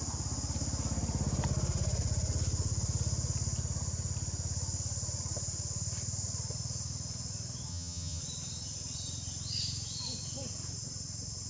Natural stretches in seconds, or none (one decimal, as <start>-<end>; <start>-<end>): 0.0-7.7; 8.2-11.5